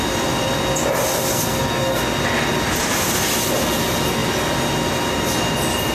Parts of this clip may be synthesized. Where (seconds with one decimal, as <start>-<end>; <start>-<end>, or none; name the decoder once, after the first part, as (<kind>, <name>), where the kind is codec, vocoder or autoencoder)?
1.3-2.0 (codec, SNAC)

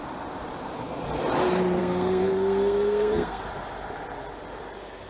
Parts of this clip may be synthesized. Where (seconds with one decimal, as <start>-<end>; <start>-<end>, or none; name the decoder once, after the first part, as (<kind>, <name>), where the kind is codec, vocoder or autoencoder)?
1.8-3.4 (codec, SNAC)

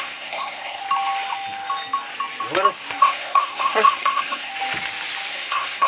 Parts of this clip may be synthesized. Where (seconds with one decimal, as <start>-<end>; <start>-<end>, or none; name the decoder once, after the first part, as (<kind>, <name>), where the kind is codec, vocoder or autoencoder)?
0.0-0.8 (codec, SNAC); 3.0-4.5; 5.3-5.9